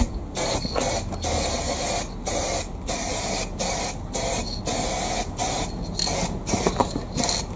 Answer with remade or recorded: recorded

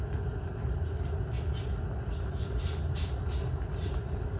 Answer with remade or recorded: recorded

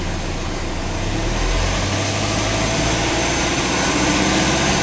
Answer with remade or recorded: recorded